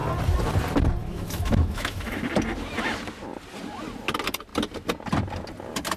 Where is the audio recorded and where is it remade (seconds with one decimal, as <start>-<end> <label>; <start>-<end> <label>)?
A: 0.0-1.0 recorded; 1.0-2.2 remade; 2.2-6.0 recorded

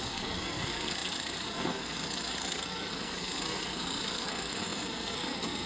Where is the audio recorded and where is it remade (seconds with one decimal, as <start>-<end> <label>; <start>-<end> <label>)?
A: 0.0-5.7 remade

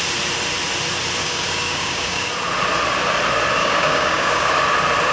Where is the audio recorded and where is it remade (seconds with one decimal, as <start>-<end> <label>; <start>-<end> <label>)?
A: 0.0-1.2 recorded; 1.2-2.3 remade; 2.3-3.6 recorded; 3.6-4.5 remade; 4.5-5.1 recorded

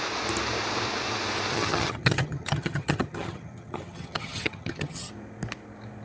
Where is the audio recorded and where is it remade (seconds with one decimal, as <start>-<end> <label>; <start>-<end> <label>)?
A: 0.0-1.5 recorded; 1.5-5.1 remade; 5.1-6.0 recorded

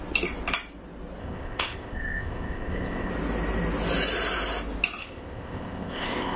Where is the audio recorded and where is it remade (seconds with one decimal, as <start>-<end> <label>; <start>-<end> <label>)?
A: 0.0-1.2 recorded; 1.2-3.1 remade; 3.1-5.0 recorded; 5.0-6.4 remade

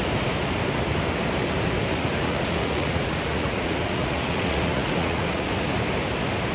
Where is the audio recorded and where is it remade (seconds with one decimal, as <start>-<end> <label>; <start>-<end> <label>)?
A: 0.0-1.9 recorded; 1.9-5.5 remade; 5.5-6.5 recorded

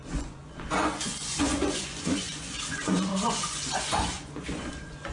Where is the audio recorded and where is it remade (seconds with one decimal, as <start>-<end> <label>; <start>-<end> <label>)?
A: 0.0-5.1 remade

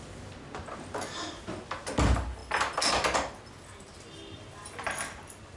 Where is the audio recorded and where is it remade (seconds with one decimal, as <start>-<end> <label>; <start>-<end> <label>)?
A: 0.0-5.6 recorded